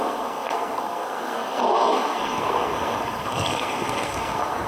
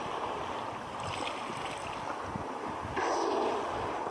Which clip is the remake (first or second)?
first